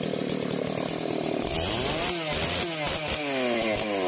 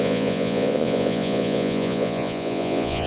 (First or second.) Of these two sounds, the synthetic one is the second